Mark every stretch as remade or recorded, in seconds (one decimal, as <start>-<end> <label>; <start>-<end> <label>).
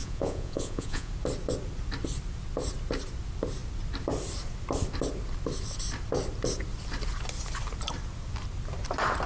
0.0-1.1 remade; 1.1-9.3 recorded